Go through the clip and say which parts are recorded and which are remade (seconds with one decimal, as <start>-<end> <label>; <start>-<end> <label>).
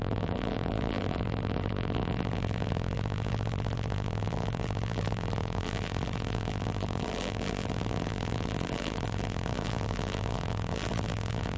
0.0-11.6 remade